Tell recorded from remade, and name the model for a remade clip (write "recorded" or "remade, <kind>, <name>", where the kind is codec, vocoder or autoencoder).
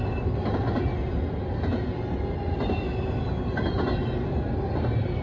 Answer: recorded